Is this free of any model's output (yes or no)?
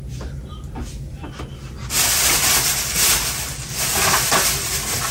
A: yes